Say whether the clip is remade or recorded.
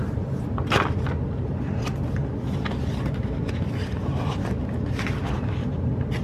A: remade